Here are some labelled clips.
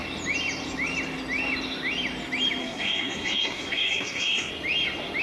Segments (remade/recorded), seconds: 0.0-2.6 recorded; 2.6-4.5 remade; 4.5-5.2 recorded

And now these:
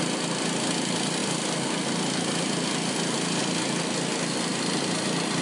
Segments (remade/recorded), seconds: 0.0-5.4 recorded

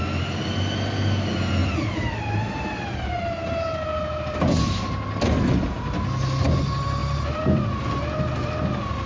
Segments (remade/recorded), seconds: 0.0-1.6 recorded; 1.6-2.4 remade; 2.4-7.0 recorded; 7.0-7.9 remade; 7.9-9.1 recorded

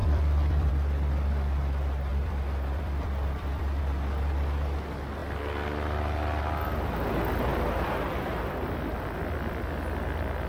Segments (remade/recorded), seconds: 0.0-0.7 remade; 0.7-2.1 recorded; 2.1-3.8 remade; 3.8-5.2 recorded; 5.2-6.4 remade; 6.4-7.5 recorded; 7.5-9.6 remade; 9.6-10.5 recorded

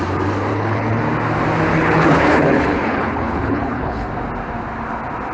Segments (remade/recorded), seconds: 0.0-0.5 recorded; 0.5-1.0 remade; 1.0-1.7 recorded; 1.7-4.1 remade; 4.1-5.3 recorded